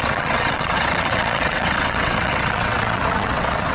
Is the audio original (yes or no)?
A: no